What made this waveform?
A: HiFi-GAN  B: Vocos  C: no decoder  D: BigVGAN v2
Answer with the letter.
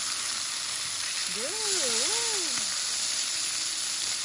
C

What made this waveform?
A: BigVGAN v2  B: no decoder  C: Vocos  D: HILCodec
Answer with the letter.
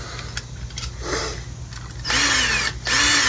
B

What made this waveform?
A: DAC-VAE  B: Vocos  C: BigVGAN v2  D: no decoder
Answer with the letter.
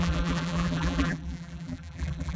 C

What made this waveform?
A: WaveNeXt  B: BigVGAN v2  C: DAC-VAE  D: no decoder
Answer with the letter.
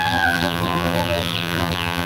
B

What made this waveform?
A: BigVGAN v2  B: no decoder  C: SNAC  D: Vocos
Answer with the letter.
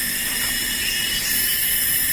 A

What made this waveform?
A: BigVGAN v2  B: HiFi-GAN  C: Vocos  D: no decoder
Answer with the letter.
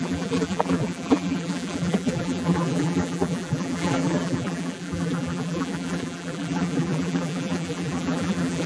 A